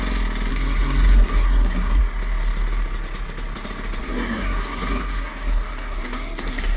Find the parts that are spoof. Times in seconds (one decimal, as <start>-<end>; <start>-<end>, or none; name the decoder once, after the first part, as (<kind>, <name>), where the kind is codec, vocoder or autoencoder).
0.5-2.0 (codec, SNAC); 4.0-6.8